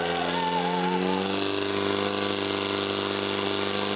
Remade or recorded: recorded